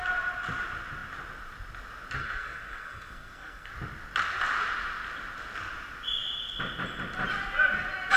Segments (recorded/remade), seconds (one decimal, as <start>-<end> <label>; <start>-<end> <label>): 0.0-2.2 recorded; 2.2-3.7 remade; 3.7-8.2 recorded